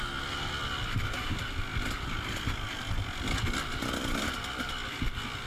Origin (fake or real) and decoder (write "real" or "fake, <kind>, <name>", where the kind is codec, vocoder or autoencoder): real